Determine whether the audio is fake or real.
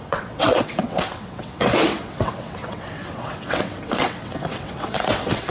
fake